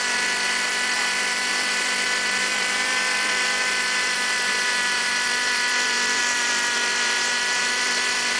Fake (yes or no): yes